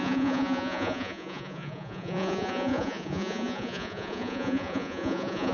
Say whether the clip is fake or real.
fake